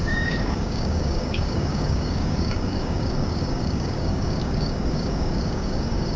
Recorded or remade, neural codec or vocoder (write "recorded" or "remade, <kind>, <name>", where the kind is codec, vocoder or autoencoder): remade, codec, DAC